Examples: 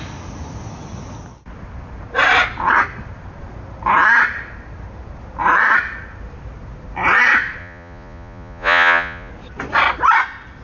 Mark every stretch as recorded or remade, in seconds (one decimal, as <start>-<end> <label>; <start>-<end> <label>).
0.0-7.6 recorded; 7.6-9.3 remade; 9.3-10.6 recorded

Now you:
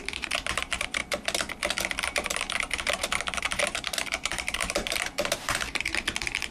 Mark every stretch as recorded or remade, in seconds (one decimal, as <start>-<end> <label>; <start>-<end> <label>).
0.0-1.0 remade; 1.0-3.4 recorded; 3.4-6.5 remade

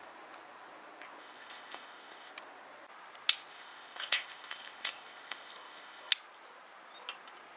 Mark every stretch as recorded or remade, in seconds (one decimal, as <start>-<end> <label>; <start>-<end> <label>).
0.0-1.2 recorded; 1.2-2.3 remade; 2.3-3.5 recorded; 3.5-6.1 remade; 6.1-7.6 recorded